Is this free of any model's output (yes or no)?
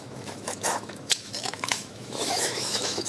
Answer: no